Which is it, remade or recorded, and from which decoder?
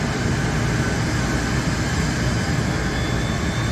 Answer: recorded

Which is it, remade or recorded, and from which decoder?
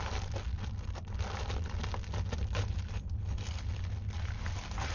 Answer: recorded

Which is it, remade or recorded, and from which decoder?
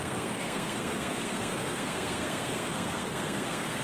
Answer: remade, codec, SNAC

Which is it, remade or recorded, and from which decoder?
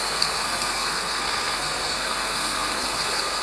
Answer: remade, codec, SNAC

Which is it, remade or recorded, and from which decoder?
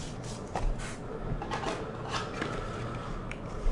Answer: recorded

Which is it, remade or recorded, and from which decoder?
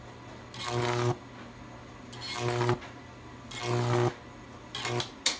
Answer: recorded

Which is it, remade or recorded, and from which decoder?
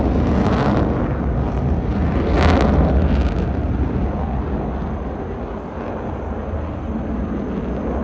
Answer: recorded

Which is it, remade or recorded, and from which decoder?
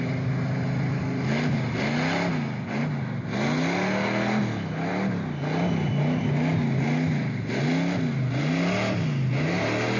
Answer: recorded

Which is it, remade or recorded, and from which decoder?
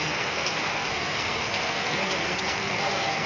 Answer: remade, codec, SNAC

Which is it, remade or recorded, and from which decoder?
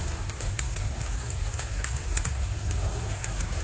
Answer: remade, codec, SNAC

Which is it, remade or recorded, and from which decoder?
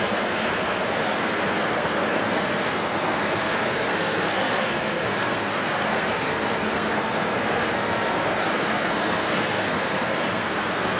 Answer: remade, codec, SNAC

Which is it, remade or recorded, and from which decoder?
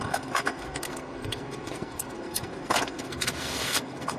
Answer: remade, codec, SNAC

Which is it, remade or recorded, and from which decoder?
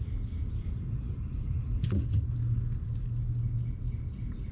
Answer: recorded